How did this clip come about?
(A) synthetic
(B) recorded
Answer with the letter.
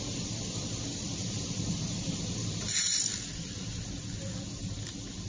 B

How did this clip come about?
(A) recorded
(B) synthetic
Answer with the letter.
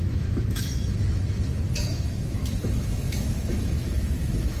B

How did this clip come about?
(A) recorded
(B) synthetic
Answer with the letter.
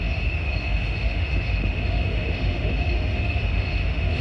B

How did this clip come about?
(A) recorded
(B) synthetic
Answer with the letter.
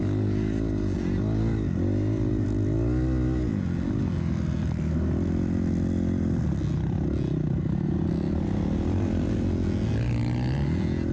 A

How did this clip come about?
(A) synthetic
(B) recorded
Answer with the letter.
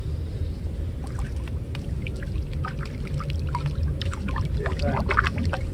B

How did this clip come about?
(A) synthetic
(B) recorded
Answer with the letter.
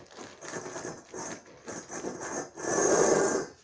B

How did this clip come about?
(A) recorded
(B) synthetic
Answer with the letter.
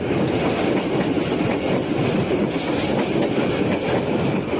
A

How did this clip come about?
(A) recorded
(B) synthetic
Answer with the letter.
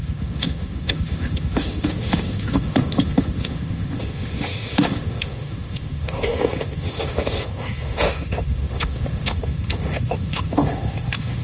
B